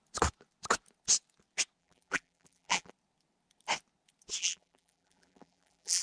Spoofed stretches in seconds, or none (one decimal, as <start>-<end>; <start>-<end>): 1.8-2.9; 4.4-6.0